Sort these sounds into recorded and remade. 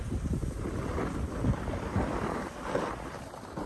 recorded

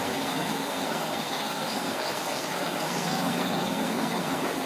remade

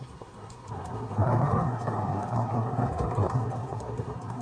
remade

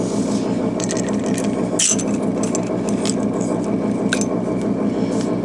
recorded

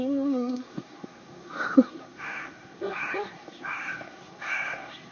remade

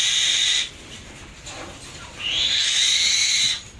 recorded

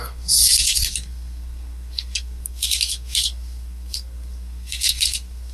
remade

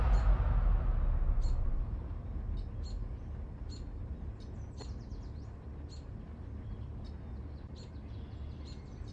recorded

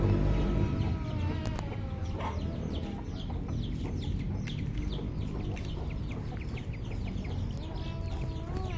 recorded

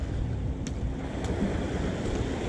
recorded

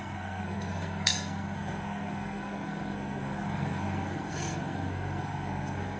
remade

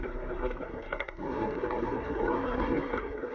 remade